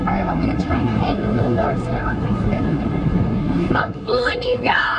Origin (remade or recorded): remade